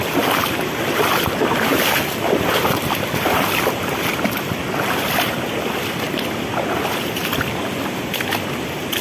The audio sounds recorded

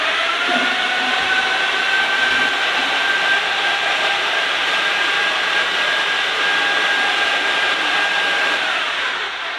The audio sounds remade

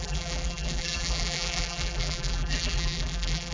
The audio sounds remade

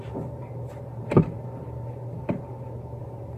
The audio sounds remade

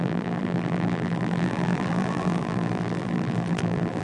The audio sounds remade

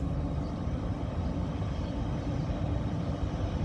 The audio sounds recorded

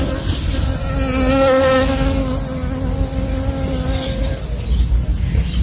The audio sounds recorded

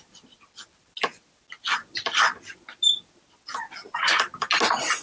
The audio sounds recorded